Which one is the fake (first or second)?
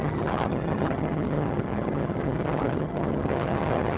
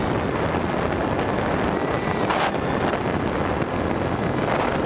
first